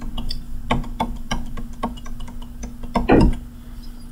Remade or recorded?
recorded